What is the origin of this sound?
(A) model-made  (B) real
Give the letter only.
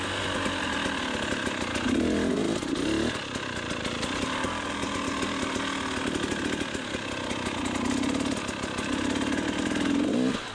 B